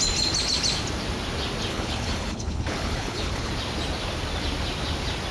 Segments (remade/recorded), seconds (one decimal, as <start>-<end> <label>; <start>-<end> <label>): 0.0-1.7 recorded; 1.7-3.5 remade; 3.5-5.3 recorded